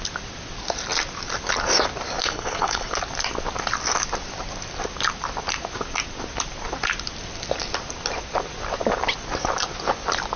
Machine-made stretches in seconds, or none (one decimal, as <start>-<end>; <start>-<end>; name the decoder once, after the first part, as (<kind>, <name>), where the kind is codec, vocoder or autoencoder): 2.2-2.9 (codec, HILCodec)